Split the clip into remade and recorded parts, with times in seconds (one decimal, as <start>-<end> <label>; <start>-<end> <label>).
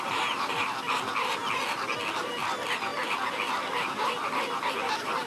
0.0-1.4 remade; 1.4-2.3 recorded; 2.3-5.3 remade